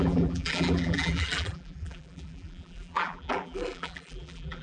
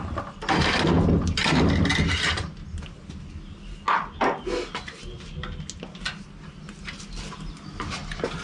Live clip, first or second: second